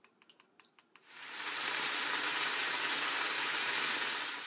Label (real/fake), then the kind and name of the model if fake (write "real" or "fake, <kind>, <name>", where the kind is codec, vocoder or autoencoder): fake, vocoder, BigVGAN v2